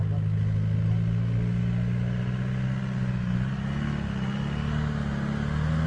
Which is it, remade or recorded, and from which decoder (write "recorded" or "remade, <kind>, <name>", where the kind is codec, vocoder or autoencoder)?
recorded